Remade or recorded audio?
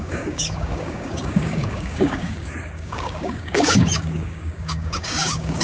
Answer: remade